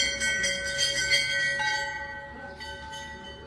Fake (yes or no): no